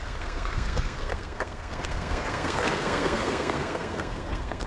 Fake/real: fake